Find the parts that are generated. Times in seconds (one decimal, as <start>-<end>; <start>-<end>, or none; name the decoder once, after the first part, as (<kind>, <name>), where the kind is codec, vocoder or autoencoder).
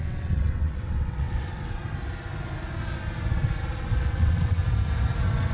0.0-1.8 (vocoder, WaveNeXt); 4.0-4.6